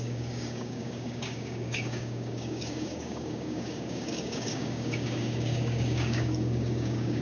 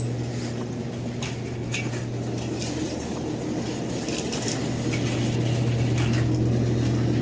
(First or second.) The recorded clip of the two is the second